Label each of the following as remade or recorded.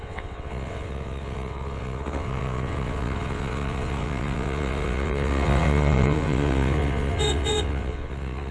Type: remade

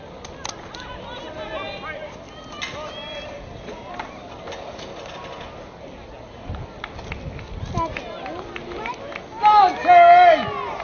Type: recorded